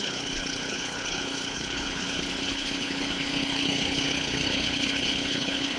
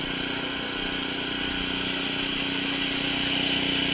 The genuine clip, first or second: second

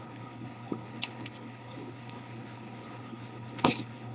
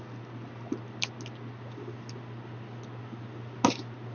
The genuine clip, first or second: second